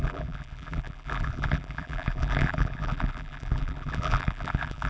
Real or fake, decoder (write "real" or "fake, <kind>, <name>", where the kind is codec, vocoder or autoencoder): fake, vocoder, BigVGAN v2